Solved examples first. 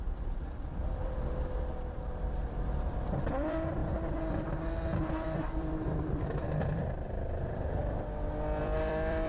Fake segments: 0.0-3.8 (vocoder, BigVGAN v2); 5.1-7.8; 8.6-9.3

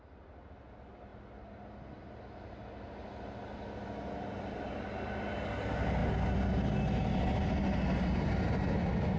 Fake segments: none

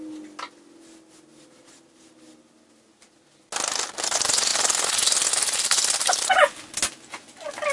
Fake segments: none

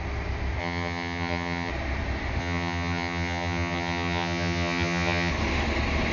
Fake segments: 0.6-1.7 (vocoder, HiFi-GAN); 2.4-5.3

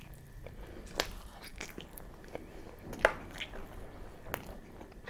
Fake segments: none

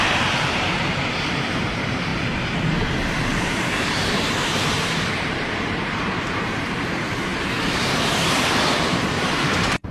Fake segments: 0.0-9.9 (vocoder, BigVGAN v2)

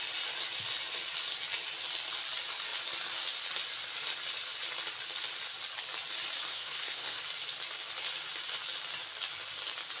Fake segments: 6.5-7.2 (codec, SNAC)